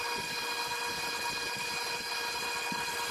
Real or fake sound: real